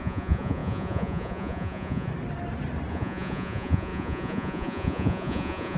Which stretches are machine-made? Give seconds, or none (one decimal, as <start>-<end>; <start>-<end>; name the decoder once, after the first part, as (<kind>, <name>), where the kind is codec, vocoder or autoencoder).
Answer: 0.0-2.1 (vocoder, Vocos); 2.9-5.8